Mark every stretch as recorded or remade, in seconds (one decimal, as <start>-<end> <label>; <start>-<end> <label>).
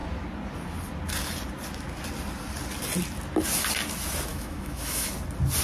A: 0.0-4.3 recorded; 4.3-5.1 remade; 5.1-5.6 recorded